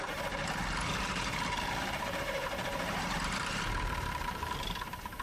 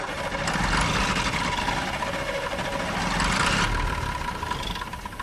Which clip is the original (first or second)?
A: second